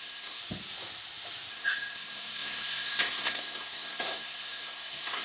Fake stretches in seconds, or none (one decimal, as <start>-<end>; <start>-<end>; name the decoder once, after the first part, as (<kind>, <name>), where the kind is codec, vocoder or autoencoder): 0.0-0.4 (codec, SNAC); 1.5-5.2